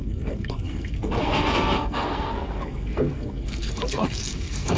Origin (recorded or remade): remade